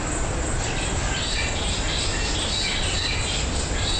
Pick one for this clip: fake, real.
real